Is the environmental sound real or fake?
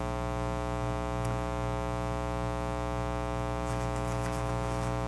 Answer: real